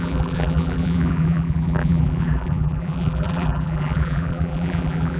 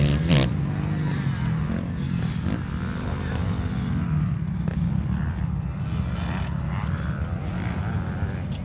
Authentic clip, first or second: second